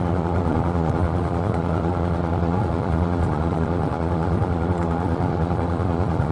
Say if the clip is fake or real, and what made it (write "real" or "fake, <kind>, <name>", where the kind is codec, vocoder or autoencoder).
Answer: fake, vocoder, Vocos